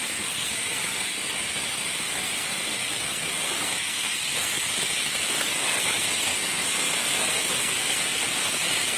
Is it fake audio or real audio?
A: fake